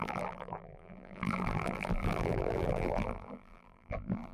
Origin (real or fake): fake